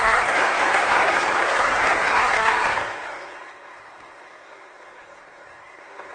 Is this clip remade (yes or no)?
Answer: yes